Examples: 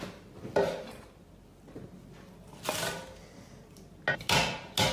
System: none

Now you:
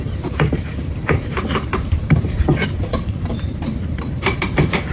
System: vocoder, BigVGAN v2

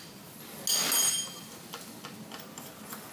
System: none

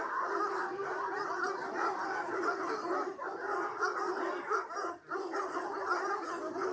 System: none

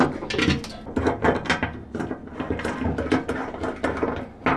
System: none